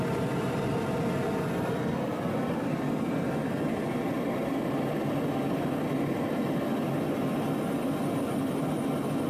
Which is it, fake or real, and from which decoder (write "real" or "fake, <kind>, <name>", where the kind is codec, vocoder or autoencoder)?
real